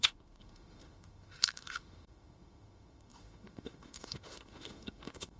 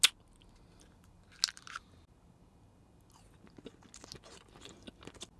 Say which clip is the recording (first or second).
second